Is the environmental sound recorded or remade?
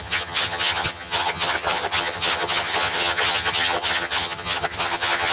remade